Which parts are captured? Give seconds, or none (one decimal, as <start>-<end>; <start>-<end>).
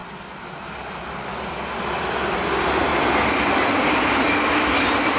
0.0-5.2